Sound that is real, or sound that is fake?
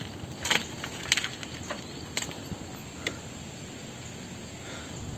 real